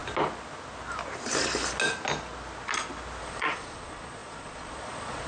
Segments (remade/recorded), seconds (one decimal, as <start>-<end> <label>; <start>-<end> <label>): 0.0-3.2 recorded; 3.2-5.3 remade